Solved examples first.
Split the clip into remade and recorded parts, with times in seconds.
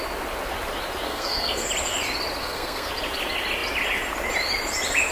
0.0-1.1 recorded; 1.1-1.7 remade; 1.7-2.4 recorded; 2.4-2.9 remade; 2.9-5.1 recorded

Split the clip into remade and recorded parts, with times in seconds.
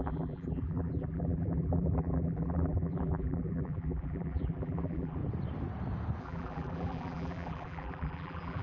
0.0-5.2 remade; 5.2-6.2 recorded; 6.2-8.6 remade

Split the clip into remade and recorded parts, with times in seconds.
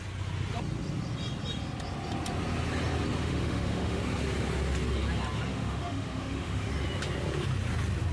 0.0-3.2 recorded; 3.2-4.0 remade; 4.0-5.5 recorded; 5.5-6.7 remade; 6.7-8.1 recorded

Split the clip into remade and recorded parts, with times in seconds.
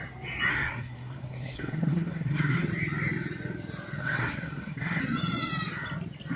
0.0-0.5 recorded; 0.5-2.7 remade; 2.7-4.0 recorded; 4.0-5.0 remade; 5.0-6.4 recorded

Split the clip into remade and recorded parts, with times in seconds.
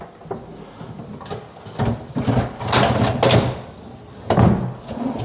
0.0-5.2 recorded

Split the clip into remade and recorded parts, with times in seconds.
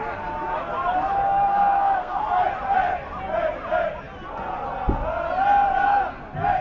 0.0-1.5 recorded; 1.5-2.2 remade; 2.2-6.6 recorded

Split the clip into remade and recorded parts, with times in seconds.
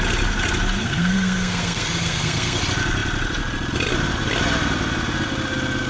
0.0-0.8 recorded; 0.8-2.6 remade; 2.6-5.9 recorded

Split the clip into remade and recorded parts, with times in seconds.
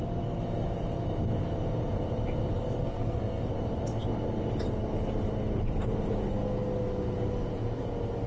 0.0-2.8 recorded; 2.8-3.5 remade; 3.5-8.3 recorded